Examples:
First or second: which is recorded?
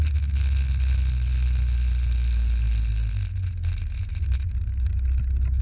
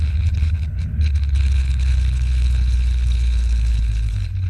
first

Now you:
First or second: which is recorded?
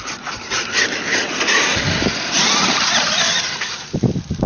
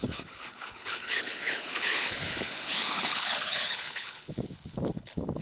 first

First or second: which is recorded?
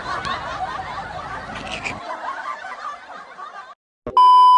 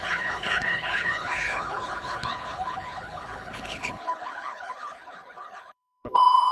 first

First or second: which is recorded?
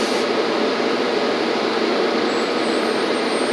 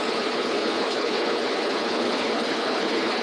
first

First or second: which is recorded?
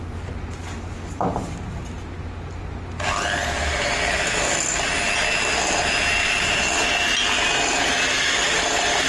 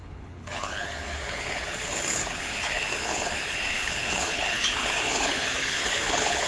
first